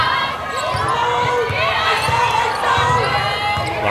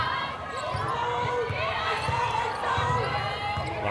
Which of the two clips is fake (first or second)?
second